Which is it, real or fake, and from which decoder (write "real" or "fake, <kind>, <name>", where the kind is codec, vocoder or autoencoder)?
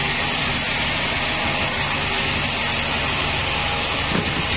real